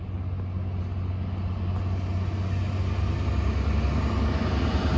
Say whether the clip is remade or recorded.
recorded